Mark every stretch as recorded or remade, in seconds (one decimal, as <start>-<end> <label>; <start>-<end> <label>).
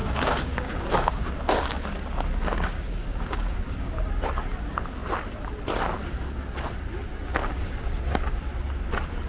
0.0-4.1 remade; 4.1-7.3 recorded; 7.3-8.0 remade; 8.0-9.3 recorded